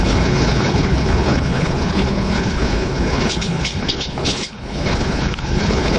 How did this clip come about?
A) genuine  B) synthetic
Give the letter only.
B